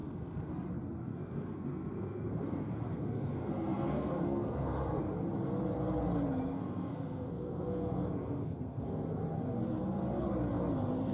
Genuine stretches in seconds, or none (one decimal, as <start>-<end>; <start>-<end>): 0.5-1.1; 5.0-6.3; 9.1-11.1